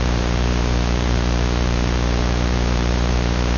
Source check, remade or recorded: remade